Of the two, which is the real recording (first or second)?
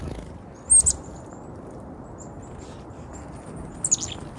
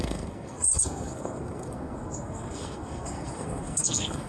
first